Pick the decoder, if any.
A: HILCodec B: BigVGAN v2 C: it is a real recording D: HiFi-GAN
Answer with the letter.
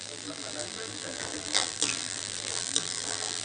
B